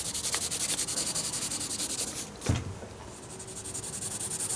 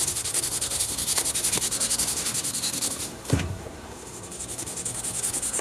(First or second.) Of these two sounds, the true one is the first